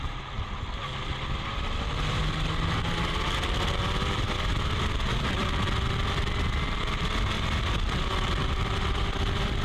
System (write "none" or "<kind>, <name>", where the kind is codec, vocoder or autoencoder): vocoder, BigVGAN v2